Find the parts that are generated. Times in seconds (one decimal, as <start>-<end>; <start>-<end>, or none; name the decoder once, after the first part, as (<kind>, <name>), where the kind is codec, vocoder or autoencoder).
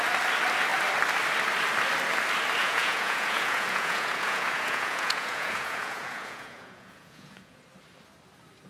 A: 2.6-7.6 (vocoder, Vocos)